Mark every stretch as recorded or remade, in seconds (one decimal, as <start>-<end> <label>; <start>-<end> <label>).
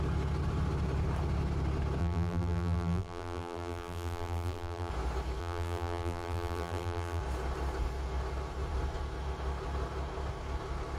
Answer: 0.0-2.0 recorded; 2.0-4.9 remade; 4.9-5.4 recorded; 5.4-7.2 remade; 7.2-11.0 recorded